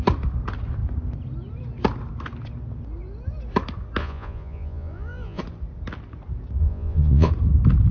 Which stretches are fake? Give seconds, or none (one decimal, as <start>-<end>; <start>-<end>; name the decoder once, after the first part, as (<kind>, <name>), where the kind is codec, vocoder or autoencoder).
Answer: 4.0-5.4 (vocoder, Vocos); 6.6-7.3